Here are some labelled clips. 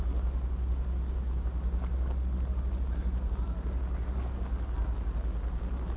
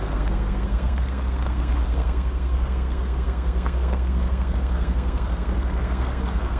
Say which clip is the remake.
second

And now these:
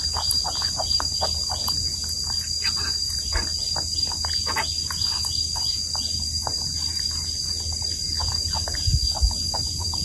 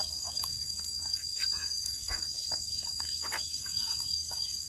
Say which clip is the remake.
second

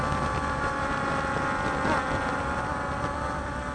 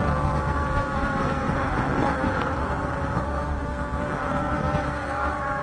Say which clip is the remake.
second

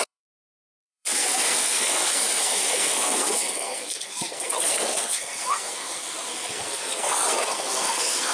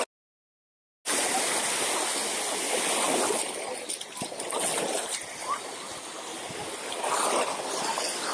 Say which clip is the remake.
first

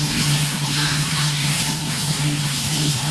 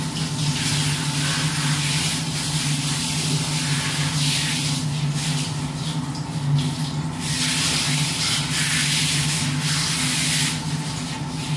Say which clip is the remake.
first